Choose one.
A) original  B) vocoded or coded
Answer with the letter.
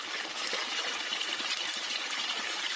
A